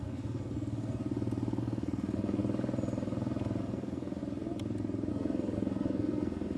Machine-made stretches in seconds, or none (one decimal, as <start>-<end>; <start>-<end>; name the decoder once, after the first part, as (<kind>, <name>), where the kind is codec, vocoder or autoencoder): 0.0-1.0 (codec, SNAC); 1.6-2.4; 3.6-4.2; 5.1-6.6